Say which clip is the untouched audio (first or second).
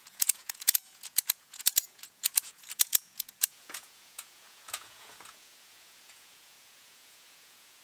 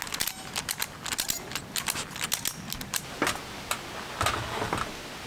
second